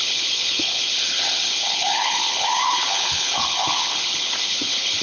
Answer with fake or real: fake